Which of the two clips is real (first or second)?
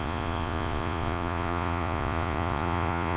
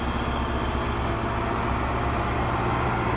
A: second